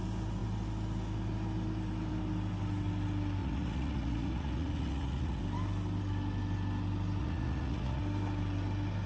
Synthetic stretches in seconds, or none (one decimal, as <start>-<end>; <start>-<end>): 3.4-5.4; 7.2-8.0